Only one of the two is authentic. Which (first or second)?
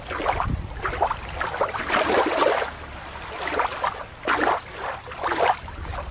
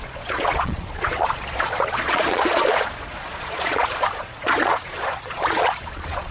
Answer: first